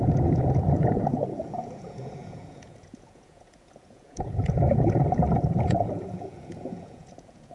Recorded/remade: remade